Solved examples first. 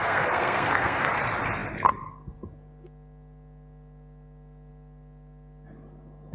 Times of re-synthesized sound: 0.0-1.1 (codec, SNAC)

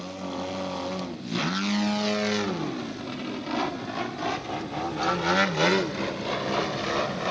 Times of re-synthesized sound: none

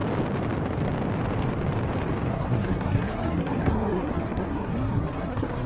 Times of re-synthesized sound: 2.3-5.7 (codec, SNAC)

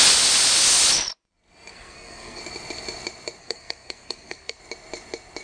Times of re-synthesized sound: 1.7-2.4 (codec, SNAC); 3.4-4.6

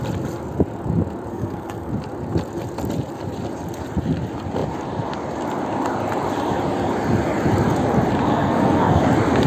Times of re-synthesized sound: 1.3-1.9 (codec, SNAC); 8.3-9.0